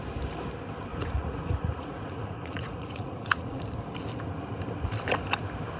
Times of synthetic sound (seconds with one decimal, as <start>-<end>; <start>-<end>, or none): 0.9-3.6